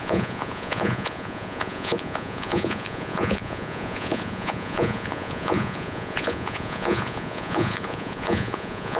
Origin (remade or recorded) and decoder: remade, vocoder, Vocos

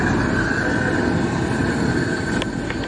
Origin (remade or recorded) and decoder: recorded